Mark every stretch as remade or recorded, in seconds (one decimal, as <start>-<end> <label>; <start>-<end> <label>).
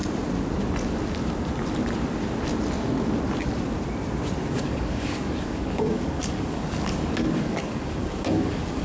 0.0-4.5 recorded; 4.5-8.8 remade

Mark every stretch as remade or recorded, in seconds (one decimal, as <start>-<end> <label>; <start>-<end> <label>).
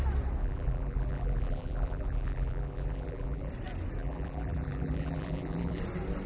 0.0-0.4 recorded; 0.4-3.5 remade; 3.5-4.0 recorded; 4.0-5.8 remade; 5.8-6.3 recorded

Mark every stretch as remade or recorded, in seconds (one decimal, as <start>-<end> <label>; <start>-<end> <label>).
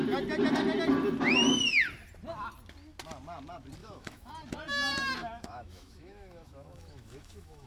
0.0-3.8 recorded; 3.8-4.3 remade; 4.3-5.2 recorded; 5.2-7.7 remade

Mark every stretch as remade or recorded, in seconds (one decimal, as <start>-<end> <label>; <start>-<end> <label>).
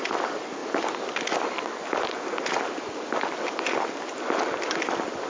0.0-5.3 recorded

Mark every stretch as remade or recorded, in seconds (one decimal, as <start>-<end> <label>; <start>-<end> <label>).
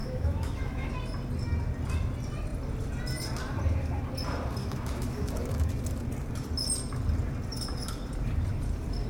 0.0-0.9 remade; 0.9-4.6 recorded; 4.6-5.7 remade; 5.7-9.1 recorded